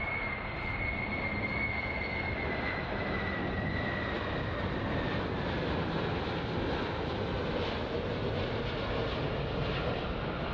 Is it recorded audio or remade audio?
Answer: recorded